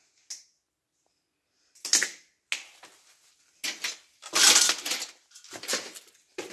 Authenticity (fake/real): real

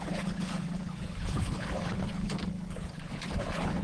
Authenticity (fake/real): fake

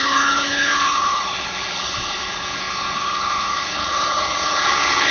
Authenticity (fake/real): fake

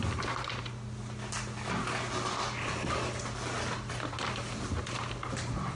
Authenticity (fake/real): real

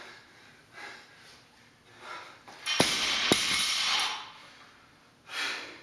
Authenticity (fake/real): real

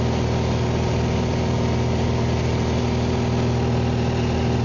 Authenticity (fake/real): real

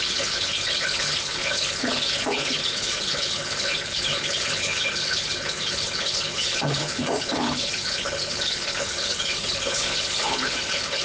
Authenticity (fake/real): fake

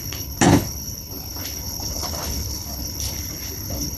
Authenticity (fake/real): fake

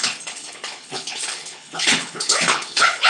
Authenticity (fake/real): fake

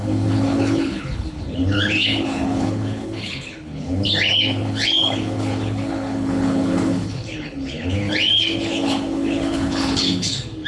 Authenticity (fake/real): fake